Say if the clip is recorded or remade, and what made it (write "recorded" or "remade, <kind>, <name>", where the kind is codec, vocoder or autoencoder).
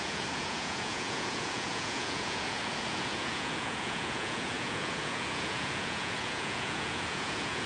remade, vocoder, Vocos